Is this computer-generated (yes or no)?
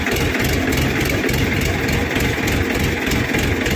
no